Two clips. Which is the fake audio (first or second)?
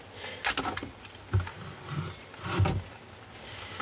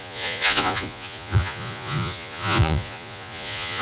second